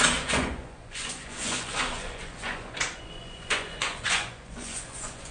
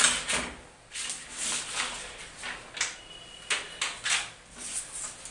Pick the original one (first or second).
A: second